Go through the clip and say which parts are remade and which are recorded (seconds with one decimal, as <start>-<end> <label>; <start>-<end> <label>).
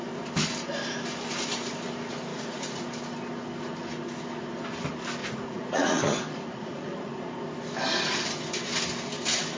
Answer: 0.0-2.3 recorded; 2.3-2.8 remade; 2.8-5.2 recorded; 5.2-7.3 remade; 7.3-9.6 recorded